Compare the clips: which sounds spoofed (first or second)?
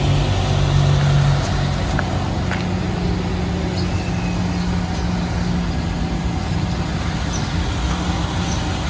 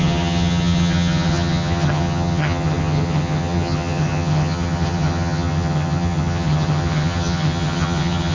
second